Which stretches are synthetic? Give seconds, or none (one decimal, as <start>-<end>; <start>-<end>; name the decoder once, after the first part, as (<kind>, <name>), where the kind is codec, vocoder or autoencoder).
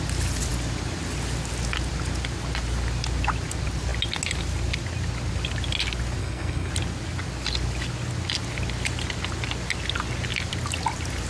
6.2-6.7 (codec, SNAC)